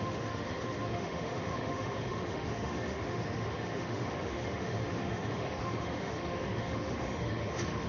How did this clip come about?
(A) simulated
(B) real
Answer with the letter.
A